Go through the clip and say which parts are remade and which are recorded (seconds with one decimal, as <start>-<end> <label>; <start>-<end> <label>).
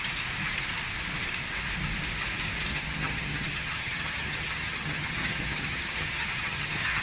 0.0-2.7 recorded; 2.7-7.0 remade